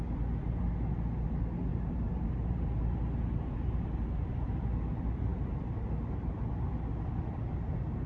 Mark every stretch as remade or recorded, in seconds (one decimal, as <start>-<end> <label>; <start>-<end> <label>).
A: 0.0-1.7 recorded; 1.7-2.8 remade; 2.8-5.3 recorded; 5.3-5.9 remade; 5.9-8.1 recorded